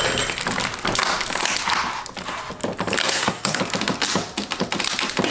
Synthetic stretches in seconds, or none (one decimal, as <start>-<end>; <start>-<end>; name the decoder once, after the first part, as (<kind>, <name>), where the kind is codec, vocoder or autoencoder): 3.0-3.6 (codec, SNAC)